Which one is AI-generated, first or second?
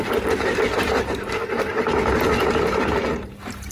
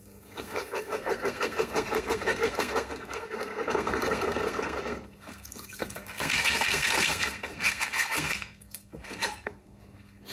second